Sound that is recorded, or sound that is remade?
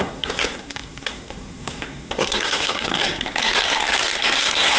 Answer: remade